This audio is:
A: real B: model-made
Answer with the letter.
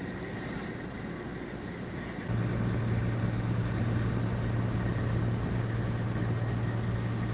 A